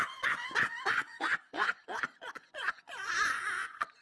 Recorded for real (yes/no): no